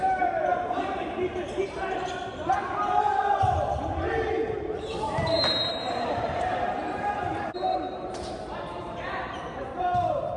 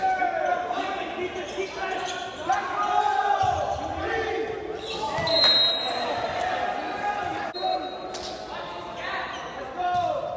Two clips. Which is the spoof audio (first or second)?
first